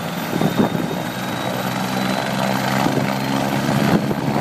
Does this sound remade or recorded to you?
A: recorded